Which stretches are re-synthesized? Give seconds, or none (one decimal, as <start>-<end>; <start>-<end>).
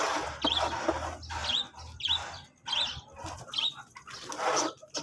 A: none